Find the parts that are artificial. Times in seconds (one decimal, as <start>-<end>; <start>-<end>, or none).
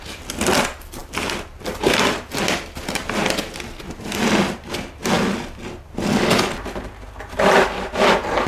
none